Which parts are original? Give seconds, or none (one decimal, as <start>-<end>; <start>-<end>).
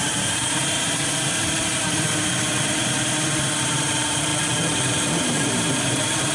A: 4.3-5.5